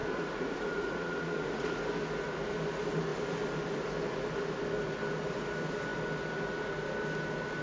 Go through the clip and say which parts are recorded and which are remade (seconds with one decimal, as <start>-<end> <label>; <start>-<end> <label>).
0.0-1.8 remade; 1.8-7.6 recorded